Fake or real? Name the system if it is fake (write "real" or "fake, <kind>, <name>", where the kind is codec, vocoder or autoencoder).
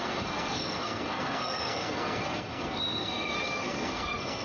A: fake, codec, SNAC